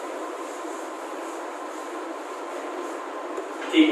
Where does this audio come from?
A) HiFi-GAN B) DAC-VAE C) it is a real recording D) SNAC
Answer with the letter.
C